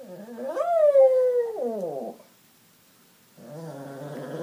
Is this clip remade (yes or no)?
no